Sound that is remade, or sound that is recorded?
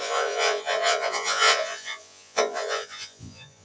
remade